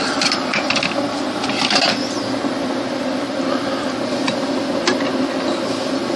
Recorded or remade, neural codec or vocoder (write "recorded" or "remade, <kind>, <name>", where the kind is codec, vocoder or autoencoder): recorded